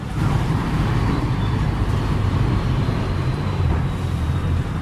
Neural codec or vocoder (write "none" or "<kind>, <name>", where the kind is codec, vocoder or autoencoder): vocoder, BigVGAN v2